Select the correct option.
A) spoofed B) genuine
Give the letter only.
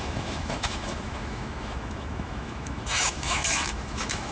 A